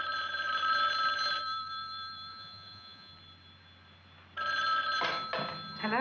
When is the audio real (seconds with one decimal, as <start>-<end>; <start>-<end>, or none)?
0.0-2.3; 3.1-6.0